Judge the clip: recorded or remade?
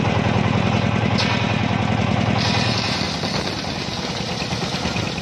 recorded